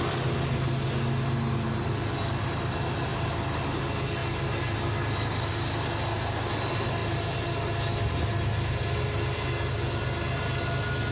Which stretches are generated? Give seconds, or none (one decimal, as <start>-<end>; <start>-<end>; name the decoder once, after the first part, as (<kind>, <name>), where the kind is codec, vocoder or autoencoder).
none